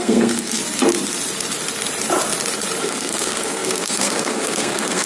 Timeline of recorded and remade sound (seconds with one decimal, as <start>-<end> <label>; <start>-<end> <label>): 0.0-0.6 remade; 0.6-2.8 recorded; 2.8-5.1 remade